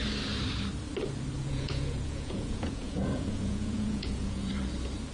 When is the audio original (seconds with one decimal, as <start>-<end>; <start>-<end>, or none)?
0.0-1.4; 4.5-5.1